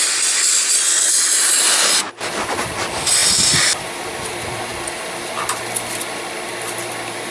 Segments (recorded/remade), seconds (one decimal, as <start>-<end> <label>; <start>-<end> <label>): 0.0-7.3 recorded

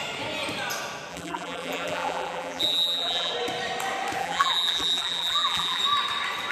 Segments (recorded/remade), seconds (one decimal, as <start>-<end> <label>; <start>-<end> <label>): 0.0-1.1 recorded; 1.1-3.3 remade; 3.3-4.2 recorded; 4.2-5.8 remade; 5.8-6.5 recorded

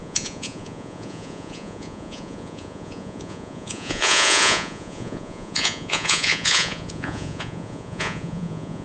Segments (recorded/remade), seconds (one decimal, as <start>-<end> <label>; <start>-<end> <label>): 0.0-8.8 remade

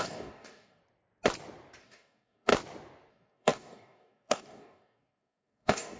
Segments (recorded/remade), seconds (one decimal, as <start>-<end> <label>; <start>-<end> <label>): 0.0-0.8 remade; 0.8-1.8 recorded; 1.8-2.5 remade; 2.5-3.1 recorded; 3.1-6.0 remade

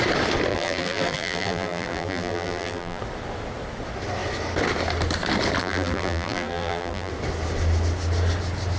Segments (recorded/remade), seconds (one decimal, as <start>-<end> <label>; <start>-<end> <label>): 0.0-0.5 recorded; 0.5-3.0 remade; 3.0-5.6 recorded; 5.6-7.1 remade; 7.1-8.8 recorded